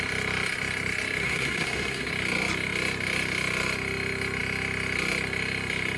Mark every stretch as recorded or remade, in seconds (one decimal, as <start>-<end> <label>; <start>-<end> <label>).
0.0-1.2 recorded; 1.2-2.1 remade; 2.1-6.0 recorded